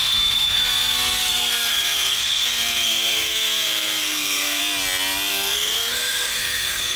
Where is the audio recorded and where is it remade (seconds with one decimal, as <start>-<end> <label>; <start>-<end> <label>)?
0.0-4.6 remade; 4.6-5.3 recorded; 5.3-7.0 remade